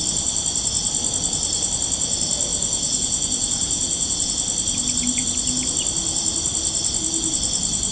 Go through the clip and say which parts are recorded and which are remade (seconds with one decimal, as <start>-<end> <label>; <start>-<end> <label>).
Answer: 0.0-2.5 recorded; 2.5-4.3 remade; 4.3-7.9 recorded